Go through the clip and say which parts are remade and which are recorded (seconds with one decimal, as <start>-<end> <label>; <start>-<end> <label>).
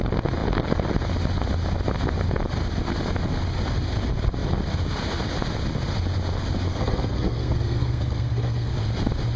0.0-6.7 recorded; 6.7-8.7 remade; 8.7-9.4 recorded